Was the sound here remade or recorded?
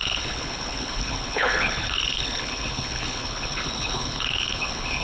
remade